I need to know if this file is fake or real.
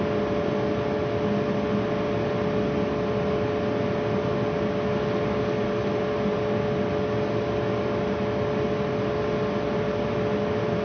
real